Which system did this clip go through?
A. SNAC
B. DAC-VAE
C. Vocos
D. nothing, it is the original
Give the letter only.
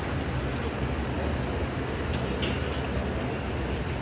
D